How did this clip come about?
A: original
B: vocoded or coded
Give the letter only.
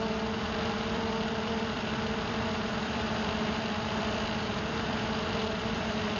B